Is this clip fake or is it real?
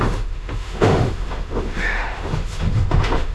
fake